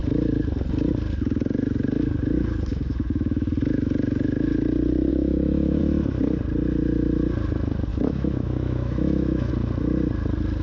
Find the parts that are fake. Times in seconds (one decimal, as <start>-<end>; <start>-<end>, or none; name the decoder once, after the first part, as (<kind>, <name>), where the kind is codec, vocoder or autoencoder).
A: 2.7-3.5 (autoencoder, DAC-VAE); 5.1-5.8; 7.9-9.5